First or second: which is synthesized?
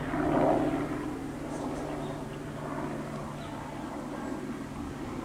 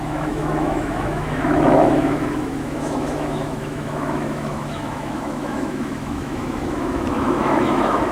second